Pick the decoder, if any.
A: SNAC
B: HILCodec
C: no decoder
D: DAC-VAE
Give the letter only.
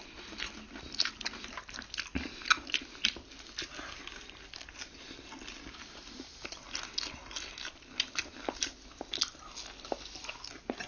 C